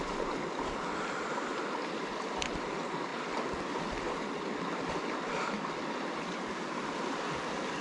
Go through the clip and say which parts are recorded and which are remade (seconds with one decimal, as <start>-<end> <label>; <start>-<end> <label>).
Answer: 0.0-7.8 recorded